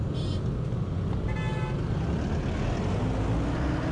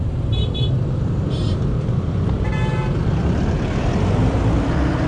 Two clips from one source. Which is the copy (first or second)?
second